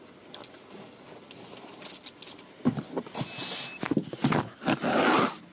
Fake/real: real